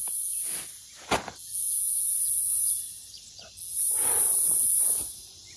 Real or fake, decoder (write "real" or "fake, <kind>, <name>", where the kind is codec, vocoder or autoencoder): real